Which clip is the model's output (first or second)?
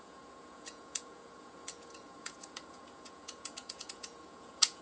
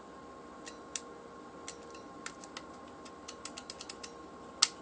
first